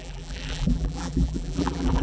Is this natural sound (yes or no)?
no